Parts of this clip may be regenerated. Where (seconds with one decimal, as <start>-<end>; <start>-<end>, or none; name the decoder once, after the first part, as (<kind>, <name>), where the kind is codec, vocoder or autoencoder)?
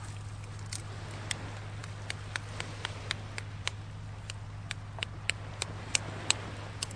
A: none